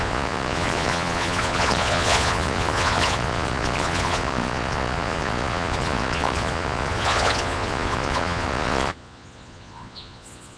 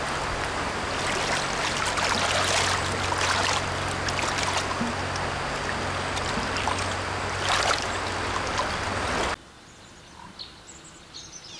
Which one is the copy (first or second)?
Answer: first